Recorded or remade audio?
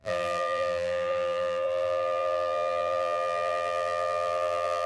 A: remade